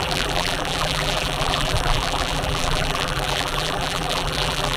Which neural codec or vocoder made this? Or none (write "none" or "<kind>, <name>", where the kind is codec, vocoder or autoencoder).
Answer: vocoder, BigVGAN v2